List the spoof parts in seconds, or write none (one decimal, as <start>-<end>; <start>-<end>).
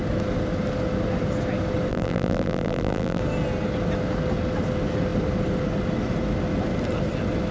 1.9-3.2